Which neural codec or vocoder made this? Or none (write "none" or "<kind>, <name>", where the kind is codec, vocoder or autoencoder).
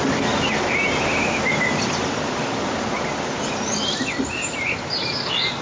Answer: none